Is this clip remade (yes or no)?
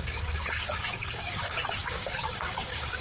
yes